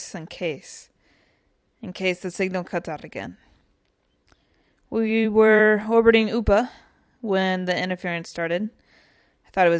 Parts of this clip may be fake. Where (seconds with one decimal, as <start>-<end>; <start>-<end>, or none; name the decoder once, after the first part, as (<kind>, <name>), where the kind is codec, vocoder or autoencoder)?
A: 4.2-8.8 (vocoder, BigVGAN v2)

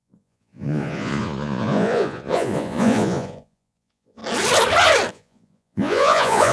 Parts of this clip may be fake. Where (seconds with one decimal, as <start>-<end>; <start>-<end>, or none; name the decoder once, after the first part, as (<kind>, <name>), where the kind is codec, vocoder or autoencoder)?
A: 0.0-4.2 (vocoder, Vocos); 5.1-6.5